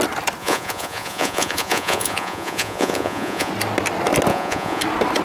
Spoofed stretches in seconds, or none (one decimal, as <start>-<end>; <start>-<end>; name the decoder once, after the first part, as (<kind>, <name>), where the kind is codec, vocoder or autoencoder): 0.4-3.5 (vocoder, Vocos); 4.3-4.8